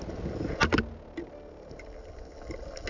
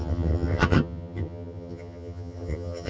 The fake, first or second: second